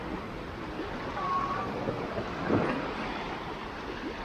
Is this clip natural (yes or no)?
no